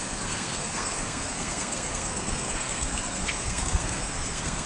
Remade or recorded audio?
remade